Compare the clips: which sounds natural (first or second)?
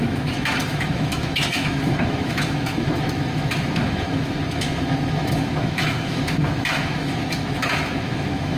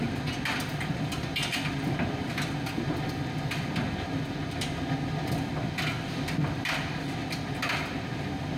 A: second